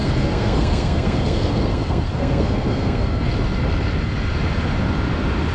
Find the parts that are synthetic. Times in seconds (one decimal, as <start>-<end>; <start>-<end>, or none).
0.0-3.3